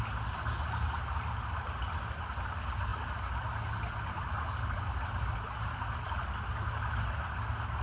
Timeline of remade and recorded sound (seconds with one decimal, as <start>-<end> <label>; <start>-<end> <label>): 0.0-7.8 recorded